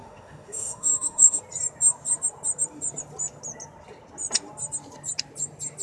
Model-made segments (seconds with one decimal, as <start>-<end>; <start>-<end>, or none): 0.0-1.4